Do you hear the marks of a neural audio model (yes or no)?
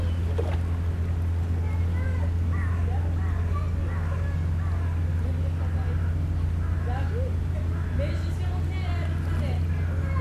no